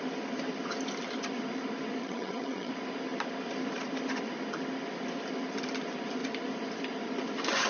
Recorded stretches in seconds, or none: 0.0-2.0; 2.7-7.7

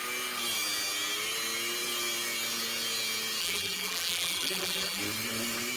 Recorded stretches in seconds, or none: 0.0-3.4; 5.0-5.8

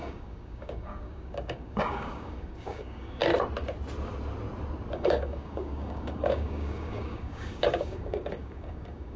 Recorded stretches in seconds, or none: 3.2-4.9

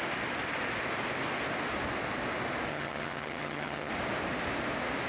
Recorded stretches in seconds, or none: 0.0-2.7; 3.9-5.1

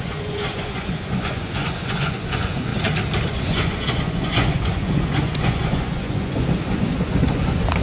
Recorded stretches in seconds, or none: 2.7-3.3

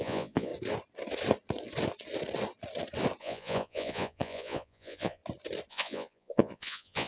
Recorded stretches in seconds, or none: 0.5-3.2; 5.2-5.7

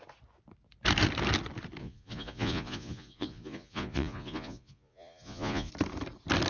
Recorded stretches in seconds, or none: 0.0-1.8; 5.7-6.5